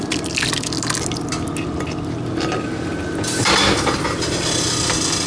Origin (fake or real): real